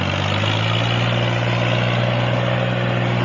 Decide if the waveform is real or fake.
real